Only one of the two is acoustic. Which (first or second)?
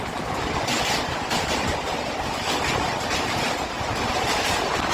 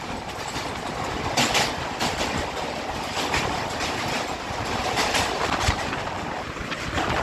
second